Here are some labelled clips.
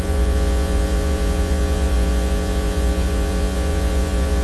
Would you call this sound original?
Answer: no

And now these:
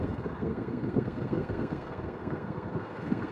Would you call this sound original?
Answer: no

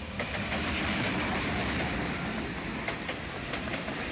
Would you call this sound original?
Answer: yes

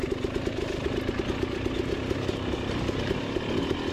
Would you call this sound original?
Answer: yes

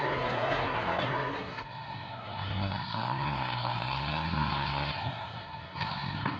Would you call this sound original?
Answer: no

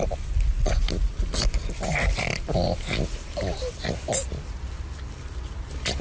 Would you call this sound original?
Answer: yes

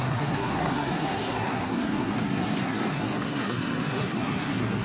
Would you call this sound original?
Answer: no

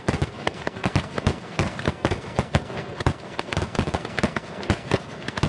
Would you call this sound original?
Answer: no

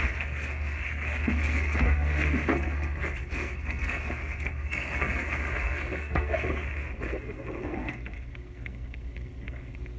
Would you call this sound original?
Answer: no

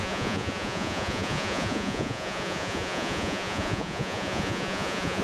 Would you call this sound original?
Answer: no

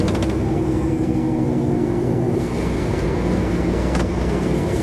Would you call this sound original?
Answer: no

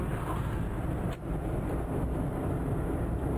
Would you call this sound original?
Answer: yes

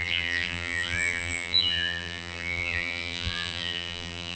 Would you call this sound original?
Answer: no